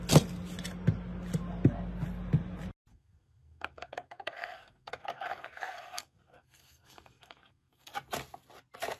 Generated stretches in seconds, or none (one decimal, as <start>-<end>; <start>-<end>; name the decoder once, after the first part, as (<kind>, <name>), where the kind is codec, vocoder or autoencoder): 2.9-7.9 (codec, SNAC)